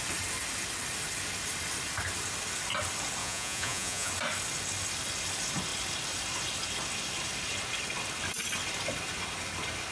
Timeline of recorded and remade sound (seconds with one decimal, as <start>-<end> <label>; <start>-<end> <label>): 0.0-3.2 recorded; 3.2-4.1 remade; 4.1-9.9 recorded